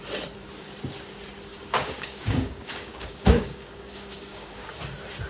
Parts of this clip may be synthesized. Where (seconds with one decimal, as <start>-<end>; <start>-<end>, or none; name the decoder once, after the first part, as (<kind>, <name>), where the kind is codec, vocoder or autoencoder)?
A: 1.5-4.7 (codec, DAC)